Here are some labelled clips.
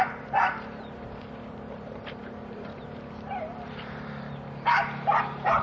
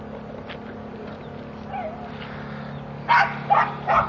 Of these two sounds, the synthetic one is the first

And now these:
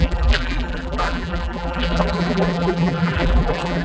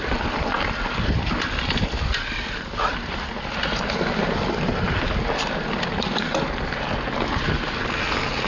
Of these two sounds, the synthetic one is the first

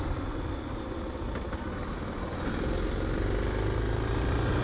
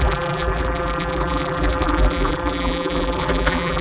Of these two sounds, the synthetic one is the second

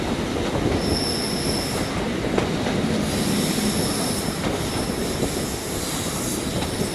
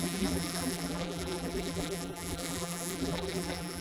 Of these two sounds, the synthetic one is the second